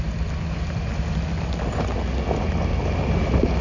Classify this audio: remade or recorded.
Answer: recorded